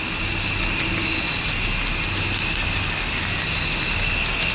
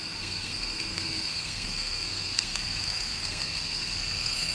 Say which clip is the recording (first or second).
first